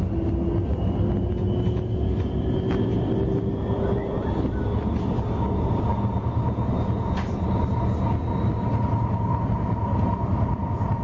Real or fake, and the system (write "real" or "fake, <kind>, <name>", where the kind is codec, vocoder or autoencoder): real